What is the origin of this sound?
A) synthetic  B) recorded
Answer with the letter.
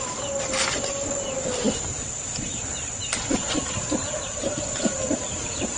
B